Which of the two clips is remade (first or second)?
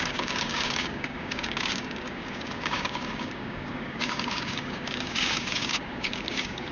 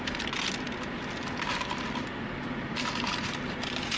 first